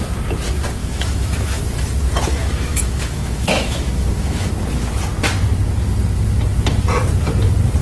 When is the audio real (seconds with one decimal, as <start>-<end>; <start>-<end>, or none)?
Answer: 0.0-0.8; 1.6-2.3; 4.5-7.8